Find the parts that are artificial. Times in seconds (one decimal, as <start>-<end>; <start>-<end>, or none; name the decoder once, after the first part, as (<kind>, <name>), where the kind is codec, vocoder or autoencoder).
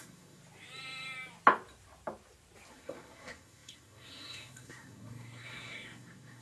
0.0-0.4 (codec, SNAC); 2.7-6.4